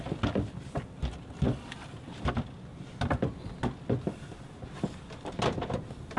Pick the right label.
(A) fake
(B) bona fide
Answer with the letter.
B